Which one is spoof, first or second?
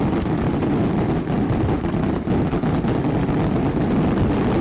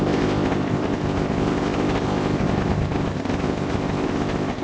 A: second